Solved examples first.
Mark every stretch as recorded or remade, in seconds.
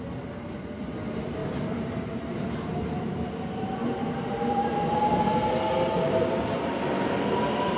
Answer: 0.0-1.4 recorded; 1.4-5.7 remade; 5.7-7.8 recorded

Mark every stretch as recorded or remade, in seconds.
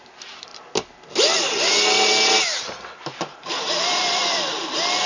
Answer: 0.0-0.5 remade; 0.5-2.6 recorded; 2.6-4.2 remade; 4.2-5.1 recorded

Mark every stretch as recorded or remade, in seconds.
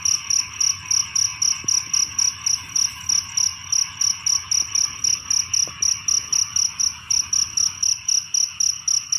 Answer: 0.0-9.2 recorded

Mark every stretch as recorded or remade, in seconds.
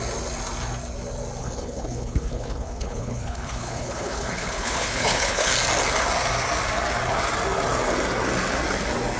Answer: 0.0-1.4 recorded; 1.4-5.5 remade; 5.5-9.2 recorded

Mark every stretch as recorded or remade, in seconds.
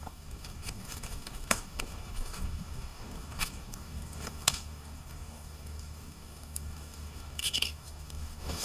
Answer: 0.0-8.6 remade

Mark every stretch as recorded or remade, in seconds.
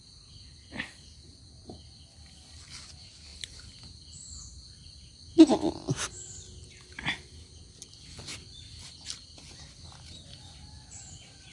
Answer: 0.0-11.5 recorded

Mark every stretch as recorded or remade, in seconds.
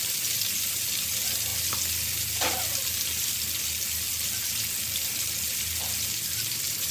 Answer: 0.0-6.9 recorded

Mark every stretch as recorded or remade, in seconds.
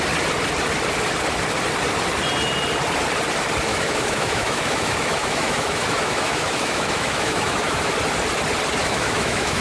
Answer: 0.0-3.7 recorded; 3.7-7.9 remade; 7.9-8.8 recorded; 8.8-9.6 remade